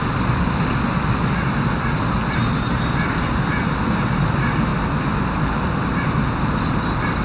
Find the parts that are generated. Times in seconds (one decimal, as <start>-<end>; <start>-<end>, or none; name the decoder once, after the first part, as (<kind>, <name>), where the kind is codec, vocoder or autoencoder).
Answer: none